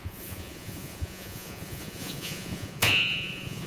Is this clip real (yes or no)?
no